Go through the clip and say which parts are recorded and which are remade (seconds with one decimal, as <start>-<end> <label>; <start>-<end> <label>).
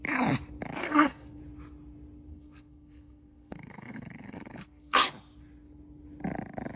0.0-0.8 recorded; 0.8-1.4 remade; 1.4-2.3 recorded; 2.3-5.1 remade; 5.1-6.8 recorded